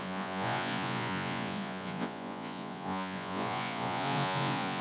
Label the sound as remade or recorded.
remade